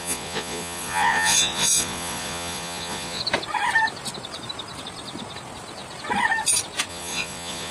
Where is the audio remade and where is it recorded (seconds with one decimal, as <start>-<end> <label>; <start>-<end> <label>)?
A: 0.0-3.2 remade; 3.2-6.9 recorded; 6.9-7.7 remade